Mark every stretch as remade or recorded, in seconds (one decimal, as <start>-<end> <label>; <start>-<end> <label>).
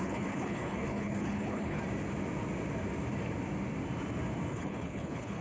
0.0-1.8 remade; 1.8-4.5 recorded; 4.5-5.4 remade